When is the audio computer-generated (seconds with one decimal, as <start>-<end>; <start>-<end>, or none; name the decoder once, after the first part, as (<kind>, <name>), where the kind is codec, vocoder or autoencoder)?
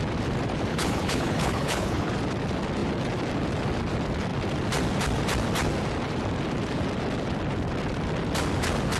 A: 0.7-2.1 (codec, HILCodec)